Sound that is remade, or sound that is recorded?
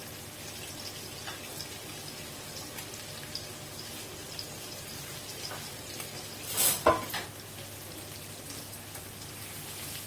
recorded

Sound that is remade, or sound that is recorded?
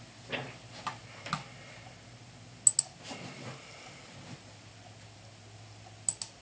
recorded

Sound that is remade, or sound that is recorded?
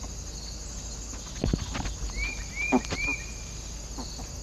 recorded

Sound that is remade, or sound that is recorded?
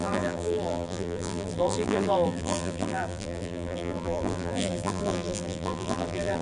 remade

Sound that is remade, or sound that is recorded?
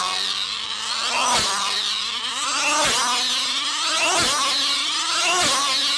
recorded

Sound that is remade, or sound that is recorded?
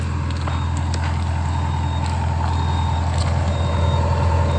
recorded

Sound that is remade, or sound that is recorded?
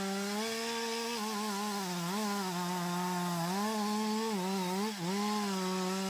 recorded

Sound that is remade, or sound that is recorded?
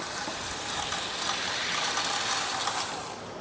recorded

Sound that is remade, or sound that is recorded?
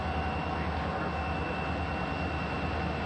recorded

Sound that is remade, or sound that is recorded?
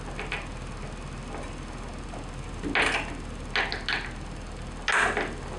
recorded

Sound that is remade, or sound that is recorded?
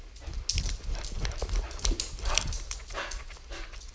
recorded